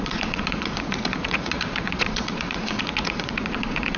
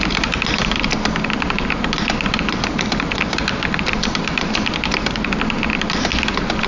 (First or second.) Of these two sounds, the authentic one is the second